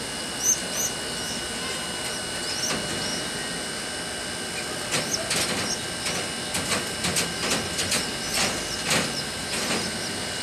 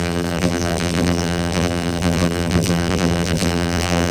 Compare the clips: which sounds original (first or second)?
first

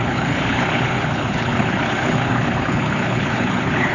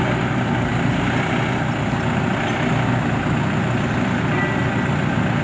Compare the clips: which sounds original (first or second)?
second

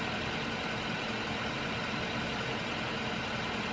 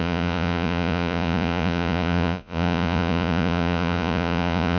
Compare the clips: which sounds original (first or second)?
first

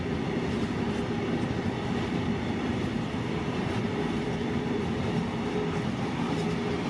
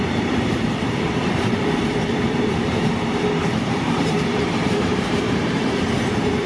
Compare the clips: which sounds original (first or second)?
first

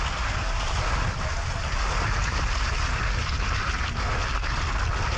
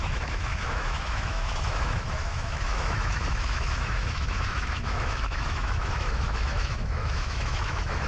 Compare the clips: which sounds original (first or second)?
first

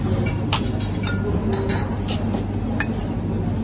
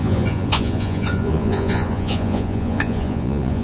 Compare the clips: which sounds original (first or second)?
first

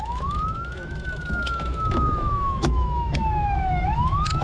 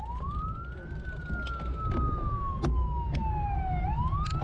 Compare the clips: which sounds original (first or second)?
second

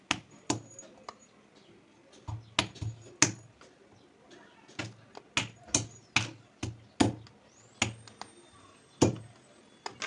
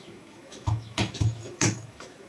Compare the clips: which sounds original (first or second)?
first